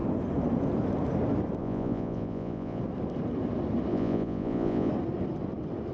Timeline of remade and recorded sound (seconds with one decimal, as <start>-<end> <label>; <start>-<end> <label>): 0.0-1.6 recorded; 1.6-2.8 remade; 2.8-3.9 recorded; 3.9-4.9 remade; 4.9-5.9 recorded